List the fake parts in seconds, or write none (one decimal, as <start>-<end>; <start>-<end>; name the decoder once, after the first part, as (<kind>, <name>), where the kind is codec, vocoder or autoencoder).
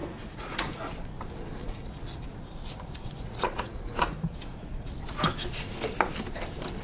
0.0-0.9 (vocoder, Vocos); 1.6-4.9